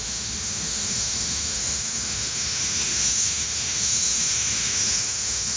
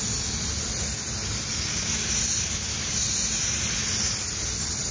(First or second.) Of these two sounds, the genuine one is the second